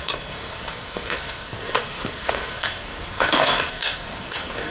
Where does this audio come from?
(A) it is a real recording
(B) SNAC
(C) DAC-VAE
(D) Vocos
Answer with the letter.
B